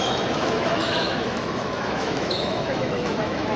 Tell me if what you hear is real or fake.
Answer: fake